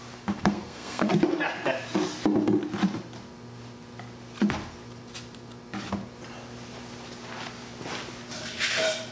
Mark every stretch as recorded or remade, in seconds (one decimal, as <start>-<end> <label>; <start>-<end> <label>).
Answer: 0.0-0.4 recorded; 0.4-1.1 remade; 1.1-9.1 recorded

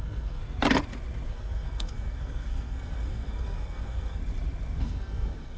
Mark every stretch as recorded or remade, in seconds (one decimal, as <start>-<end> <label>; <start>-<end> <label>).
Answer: 0.0-0.4 remade; 0.4-1.3 recorded; 1.3-4.2 remade; 4.2-4.8 recorded; 4.8-5.6 remade

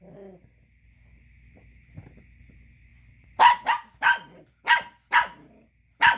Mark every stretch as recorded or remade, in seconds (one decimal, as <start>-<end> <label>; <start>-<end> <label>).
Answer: 0.0-6.2 recorded

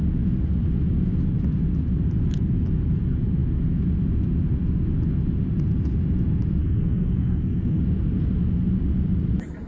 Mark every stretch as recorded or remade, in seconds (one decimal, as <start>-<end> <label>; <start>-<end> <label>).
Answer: 0.0-6.6 recorded; 6.6-7.8 remade; 7.8-9.7 recorded

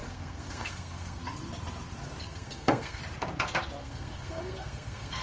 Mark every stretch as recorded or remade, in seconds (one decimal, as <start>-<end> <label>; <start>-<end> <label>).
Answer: 0.0-1.2 remade; 1.2-2.2 recorded; 2.2-3.0 remade; 3.0-3.8 recorded; 3.8-5.2 remade